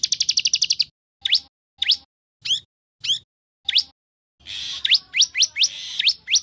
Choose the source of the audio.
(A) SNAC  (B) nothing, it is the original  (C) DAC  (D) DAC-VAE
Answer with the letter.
B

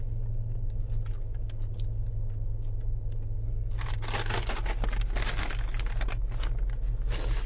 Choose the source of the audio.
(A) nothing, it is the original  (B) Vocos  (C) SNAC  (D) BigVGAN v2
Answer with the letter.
A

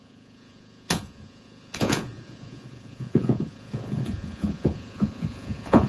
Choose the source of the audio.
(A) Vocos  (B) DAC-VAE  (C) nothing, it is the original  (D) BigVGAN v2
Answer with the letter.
A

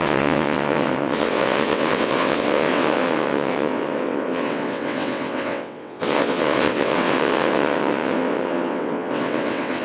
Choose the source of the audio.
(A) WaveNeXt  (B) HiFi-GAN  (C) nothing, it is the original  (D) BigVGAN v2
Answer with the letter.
A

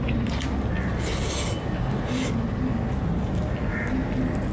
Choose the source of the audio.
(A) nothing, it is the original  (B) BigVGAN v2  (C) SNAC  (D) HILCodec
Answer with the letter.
A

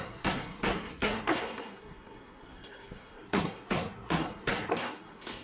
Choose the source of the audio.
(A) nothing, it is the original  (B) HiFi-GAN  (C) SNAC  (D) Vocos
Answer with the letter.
C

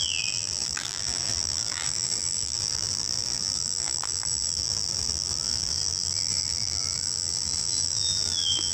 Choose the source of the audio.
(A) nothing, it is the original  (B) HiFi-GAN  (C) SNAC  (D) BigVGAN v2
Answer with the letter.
D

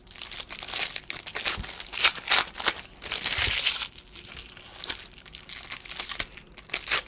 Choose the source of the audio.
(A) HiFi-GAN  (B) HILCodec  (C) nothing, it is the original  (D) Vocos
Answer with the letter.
C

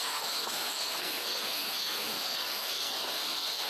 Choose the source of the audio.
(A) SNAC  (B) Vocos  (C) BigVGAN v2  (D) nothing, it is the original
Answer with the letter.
A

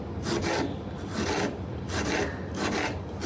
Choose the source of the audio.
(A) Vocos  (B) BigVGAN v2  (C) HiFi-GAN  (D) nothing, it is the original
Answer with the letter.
D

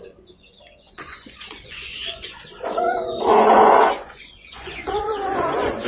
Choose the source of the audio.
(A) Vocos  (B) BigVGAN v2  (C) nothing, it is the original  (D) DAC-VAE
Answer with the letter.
A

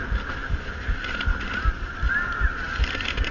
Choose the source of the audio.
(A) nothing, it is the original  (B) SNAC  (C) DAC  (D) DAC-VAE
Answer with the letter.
A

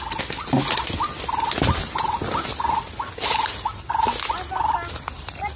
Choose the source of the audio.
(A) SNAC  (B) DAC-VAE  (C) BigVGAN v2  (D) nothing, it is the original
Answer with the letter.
D